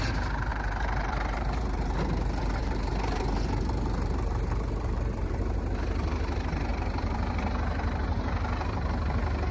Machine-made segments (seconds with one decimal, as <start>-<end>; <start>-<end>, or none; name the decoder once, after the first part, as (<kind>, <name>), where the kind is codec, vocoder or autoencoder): 0.5-2.0 (vocoder, BigVGAN v2); 2.6-5.4; 6.7-7.3